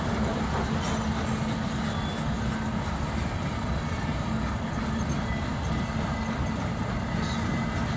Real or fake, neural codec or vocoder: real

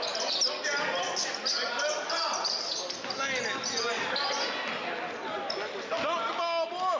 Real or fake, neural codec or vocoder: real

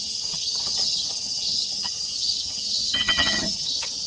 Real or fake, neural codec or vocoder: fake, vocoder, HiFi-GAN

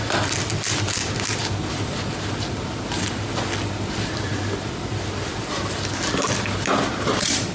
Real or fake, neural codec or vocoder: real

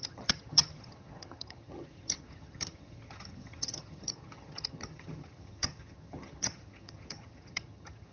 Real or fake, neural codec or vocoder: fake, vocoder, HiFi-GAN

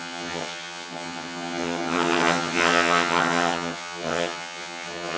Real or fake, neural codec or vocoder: fake, vocoder, HiFi-GAN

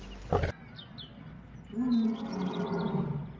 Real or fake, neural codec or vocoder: real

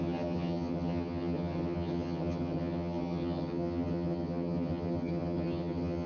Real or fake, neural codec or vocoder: fake, vocoder, HiFi-GAN